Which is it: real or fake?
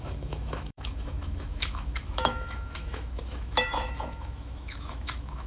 fake